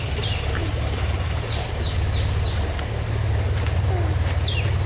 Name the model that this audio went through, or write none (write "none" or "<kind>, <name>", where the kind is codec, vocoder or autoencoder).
none